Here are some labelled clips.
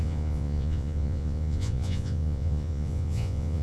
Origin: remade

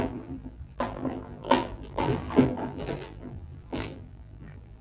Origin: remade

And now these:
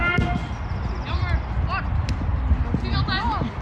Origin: recorded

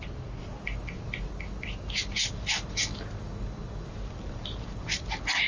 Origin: recorded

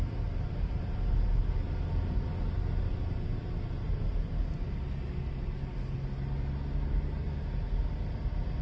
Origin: recorded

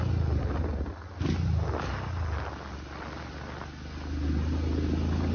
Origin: recorded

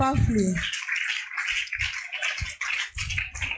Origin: recorded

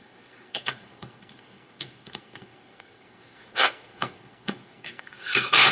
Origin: remade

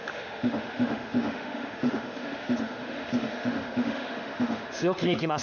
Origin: remade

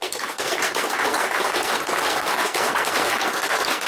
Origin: remade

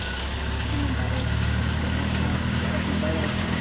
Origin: remade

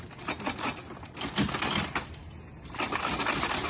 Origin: recorded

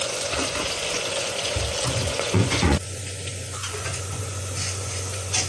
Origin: remade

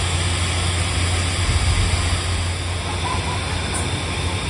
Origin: recorded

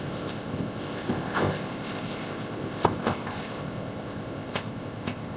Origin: remade